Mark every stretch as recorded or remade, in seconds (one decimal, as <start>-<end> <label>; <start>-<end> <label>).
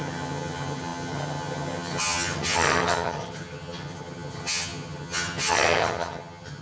0.0-6.6 remade